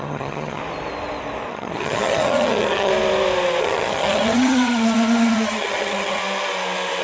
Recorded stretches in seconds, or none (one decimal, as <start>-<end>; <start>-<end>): 0.6-1.5; 2.9-3.6; 6.2-7.0